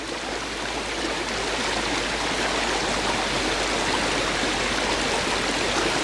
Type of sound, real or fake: real